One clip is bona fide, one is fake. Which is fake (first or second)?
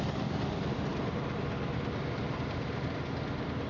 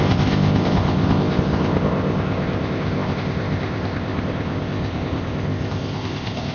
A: second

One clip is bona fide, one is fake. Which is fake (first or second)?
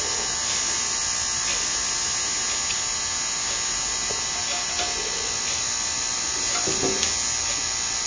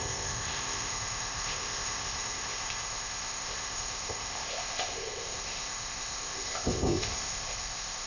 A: second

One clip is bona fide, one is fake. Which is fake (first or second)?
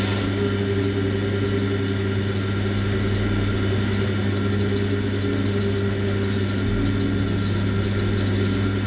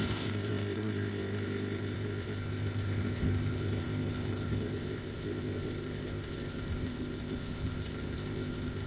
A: second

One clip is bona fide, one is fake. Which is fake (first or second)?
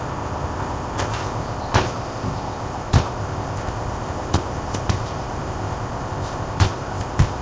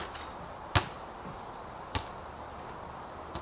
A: first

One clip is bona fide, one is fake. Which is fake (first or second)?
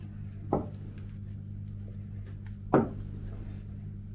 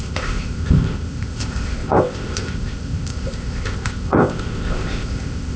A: second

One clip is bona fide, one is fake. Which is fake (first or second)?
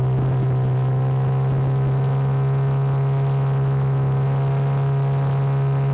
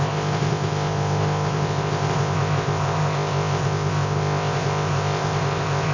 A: second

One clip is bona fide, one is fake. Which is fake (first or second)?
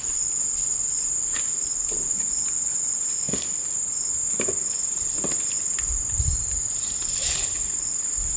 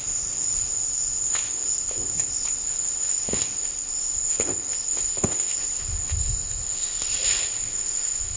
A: second